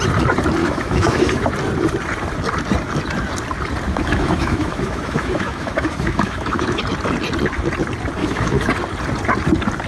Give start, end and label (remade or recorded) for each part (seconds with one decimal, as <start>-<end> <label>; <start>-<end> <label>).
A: 0.0-0.6 recorded; 0.6-1.5 remade; 1.5-3.9 recorded; 3.9-6.8 remade; 6.8-8.2 recorded; 8.2-8.7 remade; 8.7-9.9 recorded